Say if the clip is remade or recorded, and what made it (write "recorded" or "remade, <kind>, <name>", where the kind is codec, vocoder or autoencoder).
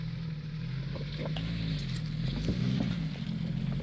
recorded